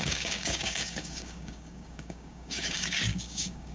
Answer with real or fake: fake